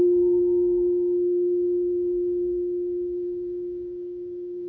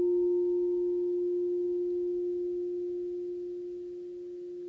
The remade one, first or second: first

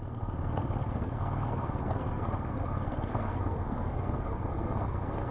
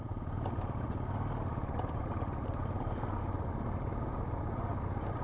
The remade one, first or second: first